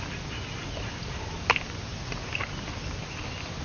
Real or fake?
real